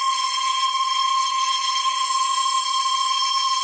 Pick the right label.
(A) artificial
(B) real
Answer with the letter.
A